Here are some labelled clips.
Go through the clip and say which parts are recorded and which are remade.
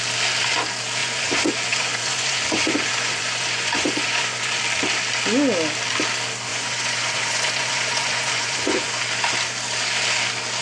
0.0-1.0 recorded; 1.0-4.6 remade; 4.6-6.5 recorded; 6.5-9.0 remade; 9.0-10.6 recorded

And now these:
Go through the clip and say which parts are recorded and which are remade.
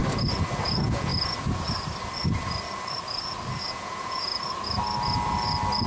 0.0-0.7 recorded; 0.7-1.1 remade; 1.1-3.7 recorded; 3.7-4.3 remade; 4.3-5.9 recorded